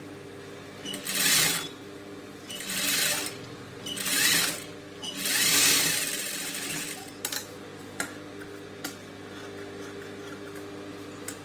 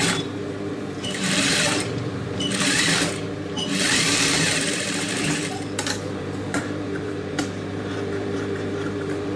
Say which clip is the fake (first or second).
second